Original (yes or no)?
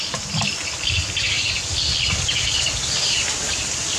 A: yes